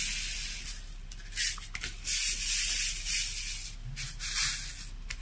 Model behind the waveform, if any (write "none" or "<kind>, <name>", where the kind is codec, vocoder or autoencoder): none